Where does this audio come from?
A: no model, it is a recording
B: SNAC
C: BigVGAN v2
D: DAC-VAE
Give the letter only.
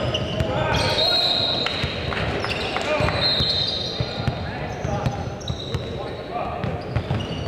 A